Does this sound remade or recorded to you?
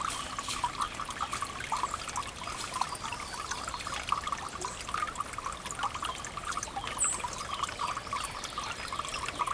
recorded